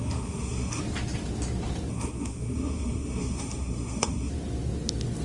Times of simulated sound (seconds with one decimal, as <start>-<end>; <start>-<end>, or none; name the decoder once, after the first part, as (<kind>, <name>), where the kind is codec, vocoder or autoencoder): 0.0-0.8 (codec, SNAC); 1.9-4.3